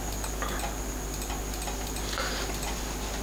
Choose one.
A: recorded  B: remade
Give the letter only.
A